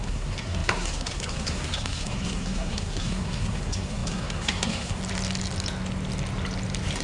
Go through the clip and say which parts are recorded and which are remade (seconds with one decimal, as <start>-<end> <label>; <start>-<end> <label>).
0.0-5.0 remade; 5.0-7.0 recorded

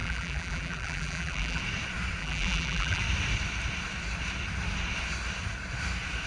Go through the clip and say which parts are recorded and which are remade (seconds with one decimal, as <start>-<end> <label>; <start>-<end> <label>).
0.0-1.6 remade; 1.6-2.2 recorded; 2.2-3.0 remade; 3.0-6.3 recorded

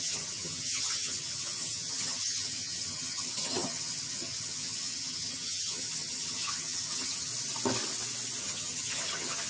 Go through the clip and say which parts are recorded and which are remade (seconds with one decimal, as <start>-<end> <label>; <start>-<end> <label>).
0.0-7.3 remade; 7.3-8.4 recorded; 8.4-9.5 remade

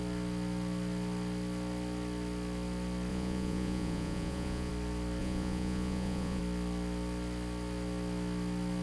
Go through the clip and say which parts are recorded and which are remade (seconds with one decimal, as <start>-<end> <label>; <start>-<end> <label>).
0.0-3.1 recorded; 3.1-4.7 remade; 4.7-5.2 recorded; 5.2-6.4 remade; 6.4-8.8 recorded

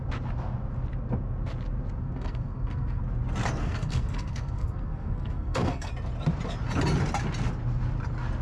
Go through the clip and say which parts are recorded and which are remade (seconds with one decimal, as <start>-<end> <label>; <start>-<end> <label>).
0.0-2.0 recorded; 2.0-3.0 remade; 3.0-3.6 recorded; 3.6-5.9 remade; 5.9-8.4 recorded

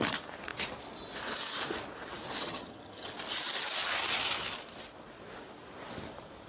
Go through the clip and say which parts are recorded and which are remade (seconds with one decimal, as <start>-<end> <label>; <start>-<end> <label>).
0.0-2.4 recorded; 2.4-3.1 remade; 3.1-6.5 recorded

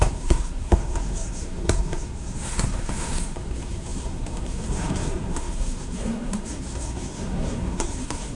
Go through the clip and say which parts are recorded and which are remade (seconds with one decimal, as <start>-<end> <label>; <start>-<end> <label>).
0.0-8.3 remade

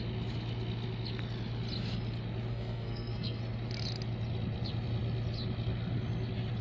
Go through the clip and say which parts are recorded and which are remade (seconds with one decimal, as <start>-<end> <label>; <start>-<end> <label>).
0.0-2.5 recorded; 2.5-3.4 remade; 3.4-6.6 recorded